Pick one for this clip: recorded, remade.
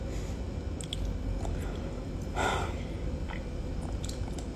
recorded